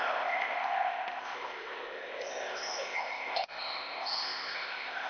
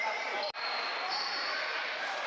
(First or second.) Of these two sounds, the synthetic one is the first